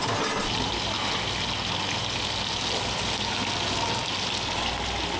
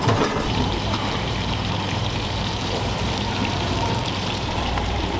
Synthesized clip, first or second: second